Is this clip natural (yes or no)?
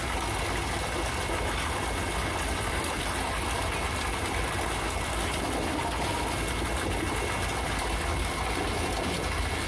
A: yes